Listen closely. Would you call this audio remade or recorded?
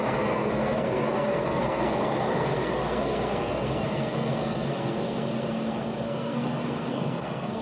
remade